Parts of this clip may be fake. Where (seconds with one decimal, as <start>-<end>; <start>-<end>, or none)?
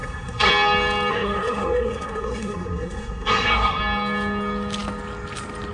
0.0-0.5; 1.1-3.8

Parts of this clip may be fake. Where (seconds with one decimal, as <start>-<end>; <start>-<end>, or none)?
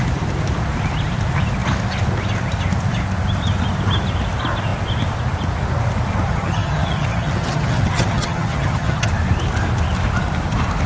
6.3-9.1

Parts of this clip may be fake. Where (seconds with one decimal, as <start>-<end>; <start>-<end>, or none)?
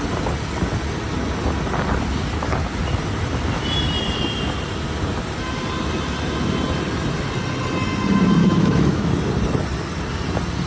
8.4-9.1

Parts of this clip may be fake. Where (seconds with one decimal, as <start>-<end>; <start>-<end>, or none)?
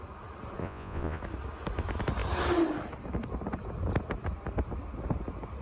0.6-1.2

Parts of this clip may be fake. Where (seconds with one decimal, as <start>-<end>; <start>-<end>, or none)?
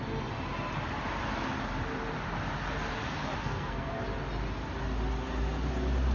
3.4-4.0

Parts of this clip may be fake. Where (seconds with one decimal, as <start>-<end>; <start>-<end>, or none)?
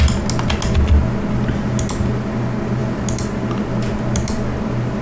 none